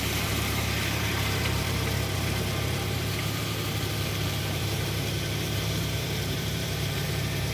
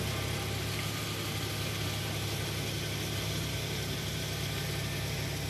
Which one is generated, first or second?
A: first